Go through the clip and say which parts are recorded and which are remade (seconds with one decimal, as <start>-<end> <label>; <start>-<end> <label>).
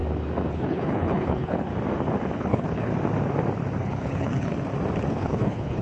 0.0-0.5 recorded; 0.5-1.7 remade; 1.7-2.4 recorded; 2.4-2.9 remade; 2.9-3.8 recorded; 3.8-4.5 remade; 4.5-5.1 recorded; 5.1-5.8 remade